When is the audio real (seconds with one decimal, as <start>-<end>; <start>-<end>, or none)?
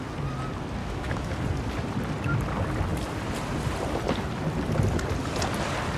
0.0-0.8; 1.3-6.0